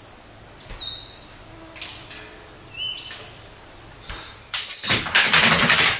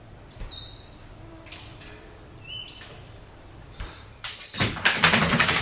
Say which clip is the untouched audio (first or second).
first